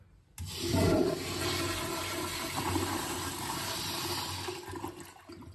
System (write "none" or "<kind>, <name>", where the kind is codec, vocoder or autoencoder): none